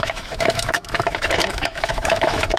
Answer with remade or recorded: remade